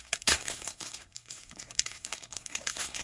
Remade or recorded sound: remade